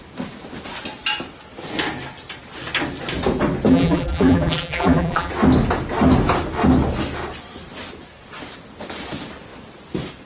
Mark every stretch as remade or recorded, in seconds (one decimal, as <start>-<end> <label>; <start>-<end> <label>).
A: 0.0-3.7 recorded; 3.7-5.3 remade; 5.3-10.2 recorded